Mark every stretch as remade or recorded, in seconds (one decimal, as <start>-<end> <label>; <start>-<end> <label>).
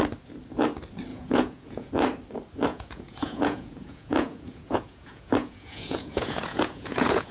0.0-1.1 recorded; 1.1-1.9 remade; 1.9-2.7 recorded; 2.7-7.3 remade